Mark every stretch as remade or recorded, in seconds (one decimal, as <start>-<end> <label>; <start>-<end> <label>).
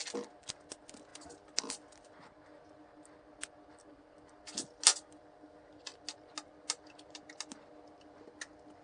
0.0-8.8 recorded